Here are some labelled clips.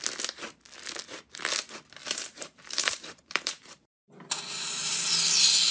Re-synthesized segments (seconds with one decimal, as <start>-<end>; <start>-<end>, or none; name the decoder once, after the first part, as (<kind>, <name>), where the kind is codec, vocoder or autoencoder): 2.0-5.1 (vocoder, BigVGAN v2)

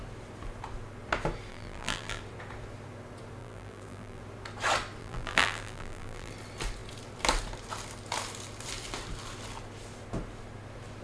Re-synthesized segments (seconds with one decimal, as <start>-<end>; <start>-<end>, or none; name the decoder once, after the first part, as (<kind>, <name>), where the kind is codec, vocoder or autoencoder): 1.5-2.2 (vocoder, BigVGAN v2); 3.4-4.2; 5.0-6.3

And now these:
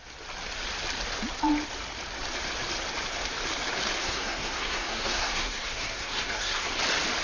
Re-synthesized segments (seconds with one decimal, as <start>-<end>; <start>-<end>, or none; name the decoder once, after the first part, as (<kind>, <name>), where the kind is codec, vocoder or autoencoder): 4.0-6.7 (codec, SNAC)

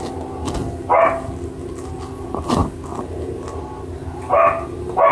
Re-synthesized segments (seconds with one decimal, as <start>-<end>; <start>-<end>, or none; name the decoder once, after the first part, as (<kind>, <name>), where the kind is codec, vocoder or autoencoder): none